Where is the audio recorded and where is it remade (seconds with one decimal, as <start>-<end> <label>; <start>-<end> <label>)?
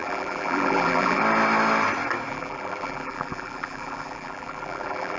0.0-1.2 remade; 1.2-2.3 recorded; 2.3-5.2 remade